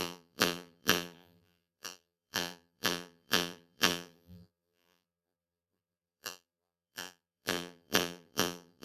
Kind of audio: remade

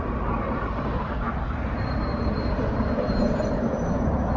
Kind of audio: remade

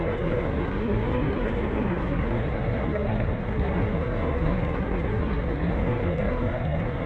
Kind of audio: remade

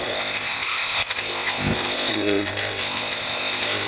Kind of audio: remade